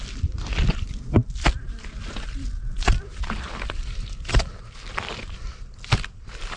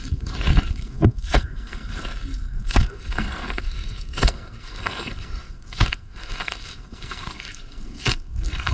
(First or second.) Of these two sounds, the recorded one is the first